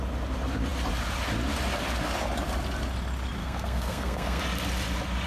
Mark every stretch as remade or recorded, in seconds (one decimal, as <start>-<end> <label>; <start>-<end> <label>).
0.0-3.4 recorded; 3.4-4.4 remade; 4.4-5.3 recorded